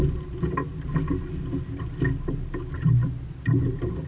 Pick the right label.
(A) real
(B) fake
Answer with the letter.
A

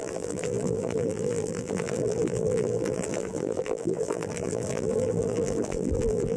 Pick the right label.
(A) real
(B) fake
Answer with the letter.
B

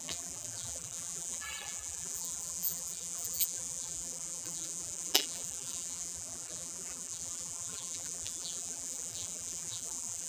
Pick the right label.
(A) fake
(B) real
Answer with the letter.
A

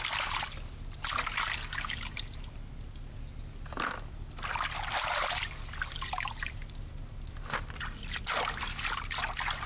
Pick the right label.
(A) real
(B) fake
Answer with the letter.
A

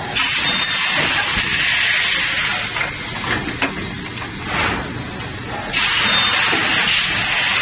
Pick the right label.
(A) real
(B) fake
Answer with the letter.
A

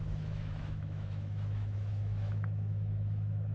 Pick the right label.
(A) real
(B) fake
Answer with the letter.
B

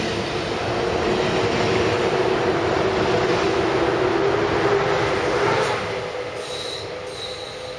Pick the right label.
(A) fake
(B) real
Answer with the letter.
B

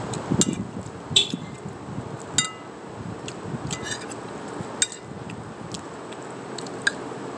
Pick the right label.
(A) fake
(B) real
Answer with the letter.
B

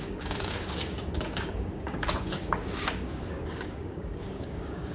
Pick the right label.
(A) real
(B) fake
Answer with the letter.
B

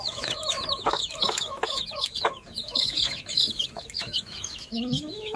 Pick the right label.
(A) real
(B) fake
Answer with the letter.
B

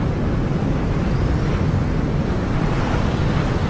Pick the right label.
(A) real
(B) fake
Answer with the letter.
A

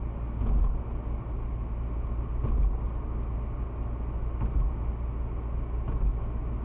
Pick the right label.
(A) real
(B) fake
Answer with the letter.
A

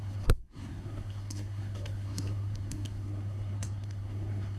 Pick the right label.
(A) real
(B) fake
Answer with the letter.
B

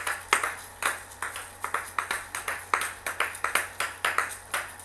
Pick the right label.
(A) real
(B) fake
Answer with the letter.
A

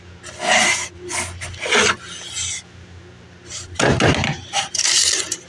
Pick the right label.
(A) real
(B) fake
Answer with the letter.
A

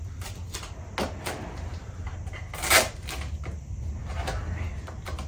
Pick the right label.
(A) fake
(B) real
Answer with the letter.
B